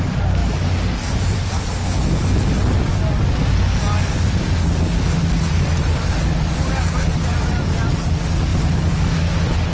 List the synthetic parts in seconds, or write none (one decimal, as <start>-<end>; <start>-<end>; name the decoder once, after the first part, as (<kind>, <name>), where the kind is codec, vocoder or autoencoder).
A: none

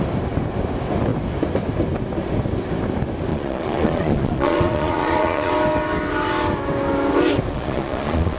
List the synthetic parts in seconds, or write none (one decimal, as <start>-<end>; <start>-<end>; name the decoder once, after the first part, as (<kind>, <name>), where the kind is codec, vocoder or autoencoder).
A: 3.3-5.5 (vocoder, Vocos); 7.5-8.4

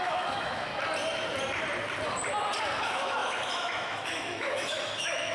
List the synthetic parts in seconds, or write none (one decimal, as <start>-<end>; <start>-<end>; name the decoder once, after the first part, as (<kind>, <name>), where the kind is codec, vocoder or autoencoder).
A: 0.0-0.7 (autoencoder, DAC-VAE); 2.8-5.3

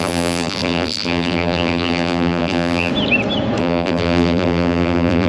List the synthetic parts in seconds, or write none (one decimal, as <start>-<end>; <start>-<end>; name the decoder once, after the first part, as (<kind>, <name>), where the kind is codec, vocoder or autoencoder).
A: 0.0-2.9 (vocoder, BigVGAN v2); 3.6-5.3